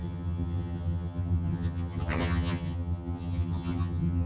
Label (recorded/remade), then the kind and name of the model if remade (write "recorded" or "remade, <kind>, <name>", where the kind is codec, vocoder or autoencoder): remade, vocoder, HiFi-GAN